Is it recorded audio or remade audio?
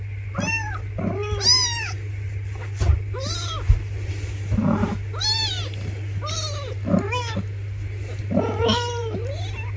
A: remade